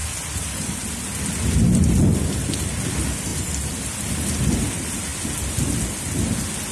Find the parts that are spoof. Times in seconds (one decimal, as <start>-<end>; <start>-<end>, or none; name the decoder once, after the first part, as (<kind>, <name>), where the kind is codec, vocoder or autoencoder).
0.0-1.2 (vocoder, BigVGAN v2); 3.3-4.4